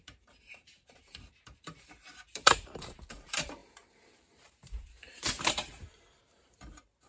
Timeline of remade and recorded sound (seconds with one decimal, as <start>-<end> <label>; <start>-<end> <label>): 0.0-7.1 remade